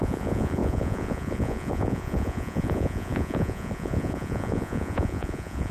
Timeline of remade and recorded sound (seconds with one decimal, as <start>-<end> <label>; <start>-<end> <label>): 0.0-5.7 remade